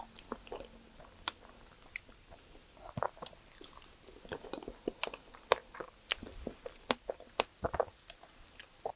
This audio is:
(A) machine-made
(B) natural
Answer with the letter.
B